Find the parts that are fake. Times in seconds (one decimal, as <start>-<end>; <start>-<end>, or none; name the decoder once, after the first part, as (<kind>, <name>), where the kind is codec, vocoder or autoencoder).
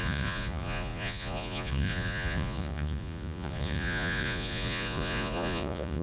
0.0-6.0 (vocoder, Vocos)